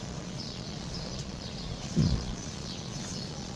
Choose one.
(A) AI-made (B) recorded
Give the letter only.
A